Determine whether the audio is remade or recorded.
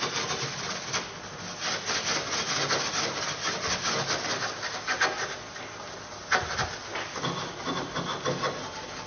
recorded